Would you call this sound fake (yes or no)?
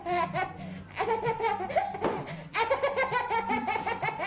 no